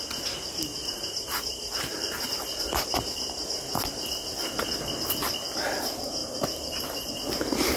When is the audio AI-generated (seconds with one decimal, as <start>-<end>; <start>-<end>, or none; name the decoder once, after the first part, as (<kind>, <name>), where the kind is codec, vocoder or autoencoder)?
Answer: 0.7-2.5 (vocoder, BigVGAN v2); 6.2-7.1